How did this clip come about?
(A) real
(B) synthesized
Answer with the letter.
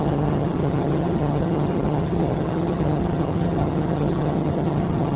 B